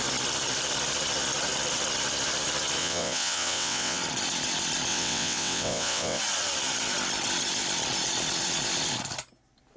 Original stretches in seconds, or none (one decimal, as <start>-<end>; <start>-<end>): 0.0-2.8; 4.0-4.9; 6.2-9.8